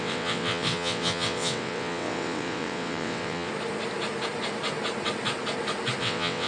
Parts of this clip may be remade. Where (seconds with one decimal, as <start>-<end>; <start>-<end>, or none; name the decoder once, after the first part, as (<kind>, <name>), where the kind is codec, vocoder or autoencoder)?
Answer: 0.0-3.5 (vocoder, WaveNeXt); 6.0-6.5